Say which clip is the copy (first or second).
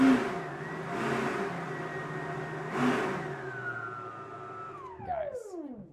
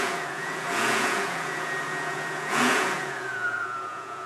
second